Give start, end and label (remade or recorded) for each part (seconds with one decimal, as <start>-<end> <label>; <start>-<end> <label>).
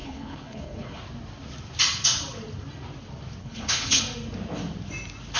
0.0-1.0 remade; 1.0-3.4 recorded; 3.4-4.0 remade; 4.0-5.4 recorded